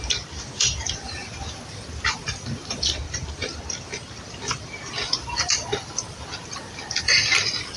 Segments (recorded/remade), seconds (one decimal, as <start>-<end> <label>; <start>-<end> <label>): 0.0-7.8 remade